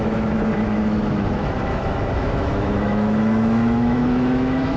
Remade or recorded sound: remade